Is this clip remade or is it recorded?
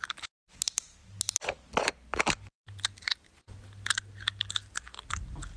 recorded